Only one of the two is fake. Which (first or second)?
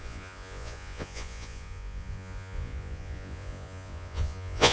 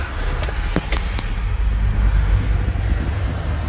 first